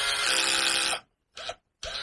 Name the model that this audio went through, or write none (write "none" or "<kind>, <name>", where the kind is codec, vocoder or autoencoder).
none